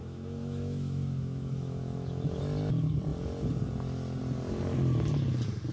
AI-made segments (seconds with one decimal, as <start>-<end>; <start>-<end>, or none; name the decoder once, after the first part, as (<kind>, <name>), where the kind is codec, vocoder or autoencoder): 0.0-2.4 (autoencoder, DAC-VAE)